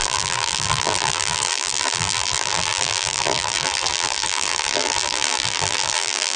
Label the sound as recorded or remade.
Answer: remade